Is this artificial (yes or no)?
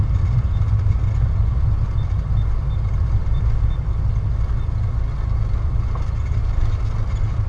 no